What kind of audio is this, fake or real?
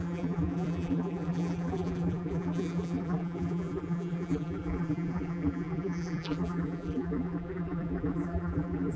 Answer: fake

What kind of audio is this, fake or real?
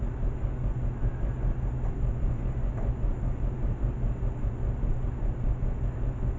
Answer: real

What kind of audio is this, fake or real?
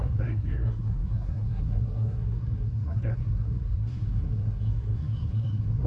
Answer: fake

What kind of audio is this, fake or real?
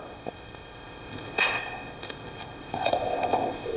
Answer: fake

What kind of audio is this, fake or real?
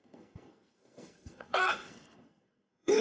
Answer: fake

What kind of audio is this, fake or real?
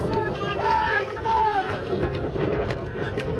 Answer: fake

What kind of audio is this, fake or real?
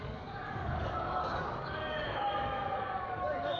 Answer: fake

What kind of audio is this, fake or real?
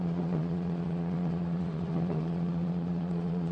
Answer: fake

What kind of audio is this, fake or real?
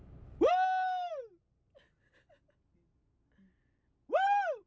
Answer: real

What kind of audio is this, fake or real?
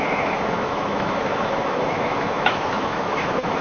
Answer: fake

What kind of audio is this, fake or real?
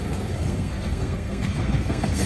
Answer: fake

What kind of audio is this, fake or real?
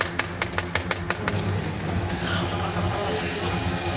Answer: real